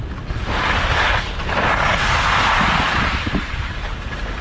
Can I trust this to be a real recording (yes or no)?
yes